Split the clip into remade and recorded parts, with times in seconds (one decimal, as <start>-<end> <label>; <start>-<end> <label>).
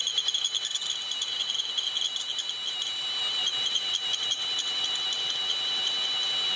0.0-3.4 recorded; 3.4-4.8 remade; 4.8-6.6 recorded